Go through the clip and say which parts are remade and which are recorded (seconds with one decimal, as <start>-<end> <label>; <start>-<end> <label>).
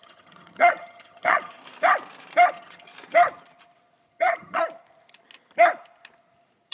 0.0-1.6 remade; 1.6-2.5 recorded; 2.5-2.9 remade; 2.9-4.1 recorded; 4.1-4.6 remade; 4.6-6.7 recorded